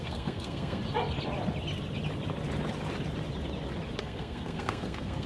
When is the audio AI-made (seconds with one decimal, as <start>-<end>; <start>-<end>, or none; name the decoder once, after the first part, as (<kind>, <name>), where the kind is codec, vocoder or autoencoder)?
0.0-0.8 (codec, SNAC); 4.0-5.3